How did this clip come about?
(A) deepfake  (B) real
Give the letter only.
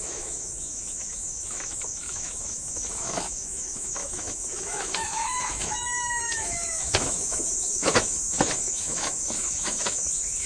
A